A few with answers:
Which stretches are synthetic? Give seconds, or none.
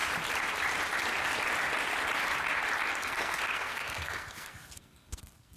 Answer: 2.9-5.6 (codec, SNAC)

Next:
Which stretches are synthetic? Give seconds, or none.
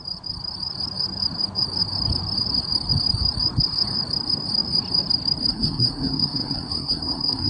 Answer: 5.5-7.5 (codec, SNAC)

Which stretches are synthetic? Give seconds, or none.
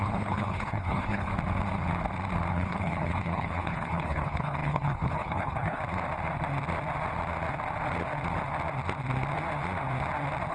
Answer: 0.0-1.3 (codec, HILCodec); 2.5-5.8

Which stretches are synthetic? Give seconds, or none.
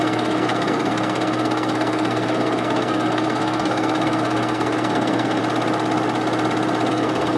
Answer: 0.0-5.4 (codec, SNAC); 6.9-7.4